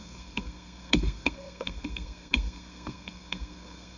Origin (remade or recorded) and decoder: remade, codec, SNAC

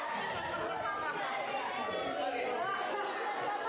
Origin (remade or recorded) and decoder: recorded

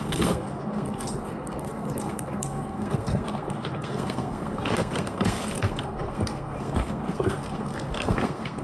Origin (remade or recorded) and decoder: remade, codec, SNAC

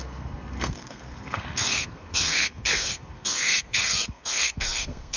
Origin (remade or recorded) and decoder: remade, codec, SNAC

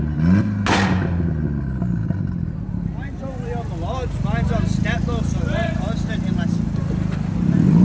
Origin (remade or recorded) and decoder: recorded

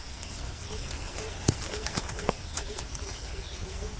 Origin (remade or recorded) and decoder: remade, codec, SNAC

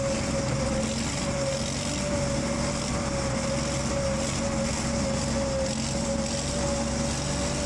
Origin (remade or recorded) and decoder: recorded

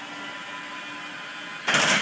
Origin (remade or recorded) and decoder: recorded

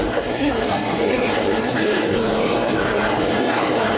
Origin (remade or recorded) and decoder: remade, codec, SNAC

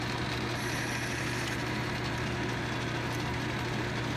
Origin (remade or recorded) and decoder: recorded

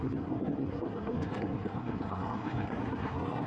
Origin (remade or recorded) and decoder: remade, codec, SNAC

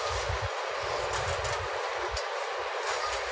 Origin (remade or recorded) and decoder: recorded